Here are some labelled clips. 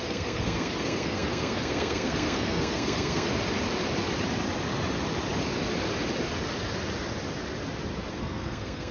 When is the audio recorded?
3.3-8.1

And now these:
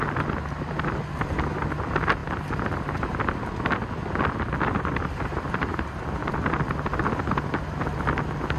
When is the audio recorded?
0.0-8.6

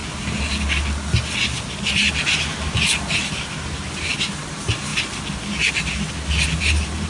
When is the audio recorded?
0.0-7.1